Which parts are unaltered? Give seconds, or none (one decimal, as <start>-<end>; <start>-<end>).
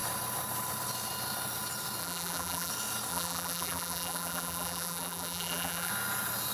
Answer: 0.0-2.0; 2.7-3.1; 5.9-6.5